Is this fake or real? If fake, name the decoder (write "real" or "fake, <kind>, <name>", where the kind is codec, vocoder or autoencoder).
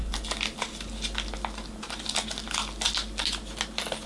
real